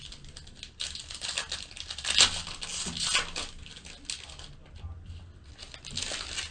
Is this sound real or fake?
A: real